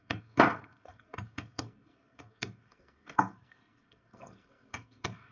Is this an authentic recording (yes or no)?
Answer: no